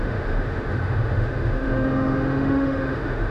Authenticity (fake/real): fake